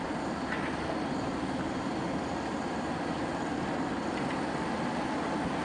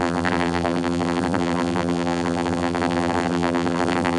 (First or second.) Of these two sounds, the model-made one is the second